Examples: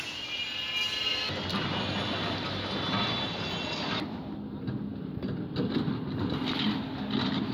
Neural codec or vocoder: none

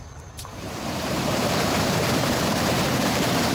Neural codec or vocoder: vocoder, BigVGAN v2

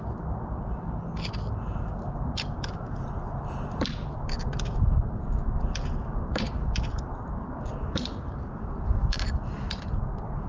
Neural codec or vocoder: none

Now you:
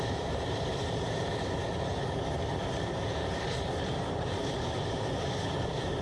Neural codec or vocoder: vocoder, BigVGAN v2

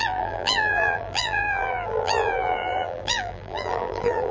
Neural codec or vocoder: vocoder, BigVGAN v2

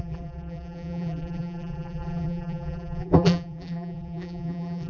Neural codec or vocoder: vocoder, BigVGAN v2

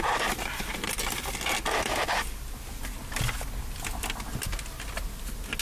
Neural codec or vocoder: none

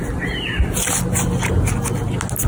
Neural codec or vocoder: none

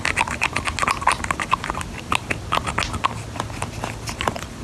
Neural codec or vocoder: none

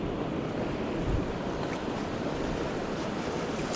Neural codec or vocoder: vocoder, BigVGAN v2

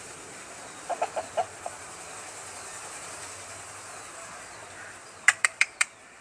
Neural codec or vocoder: vocoder, BigVGAN v2